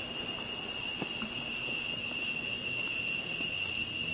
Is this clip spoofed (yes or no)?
no